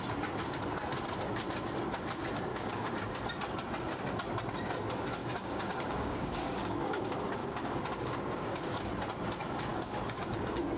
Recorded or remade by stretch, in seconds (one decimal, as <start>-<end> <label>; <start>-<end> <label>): 0.0-2.5 recorded; 2.5-3.2 remade; 3.2-5.2 recorded; 5.2-7.0 remade; 7.0-7.4 recorded; 7.4-8.8 remade; 8.8-9.7 recorded; 9.7-10.8 remade